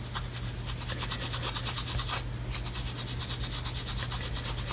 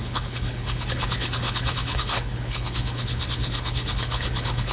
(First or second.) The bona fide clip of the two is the first